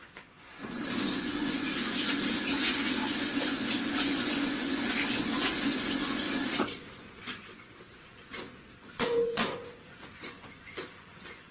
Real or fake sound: fake